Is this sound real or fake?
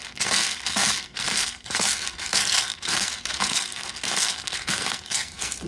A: fake